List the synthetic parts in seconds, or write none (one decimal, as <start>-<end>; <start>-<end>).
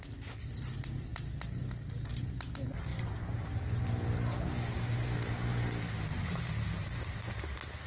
none